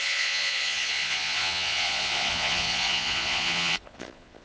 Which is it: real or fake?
fake